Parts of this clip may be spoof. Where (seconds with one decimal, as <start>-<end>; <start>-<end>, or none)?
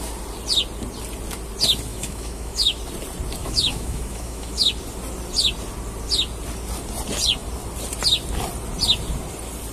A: 1.9-2.8; 3.4-4.7